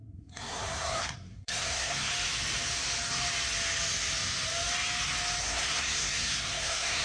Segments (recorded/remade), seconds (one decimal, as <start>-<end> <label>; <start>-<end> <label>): 0.0-2.1 remade; 2.1-5.4 recorded; 5.4-7.0 remade